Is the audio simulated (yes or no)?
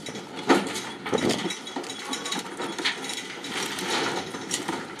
no